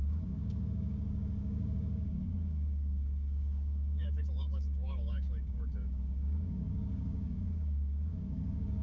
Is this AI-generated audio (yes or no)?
yes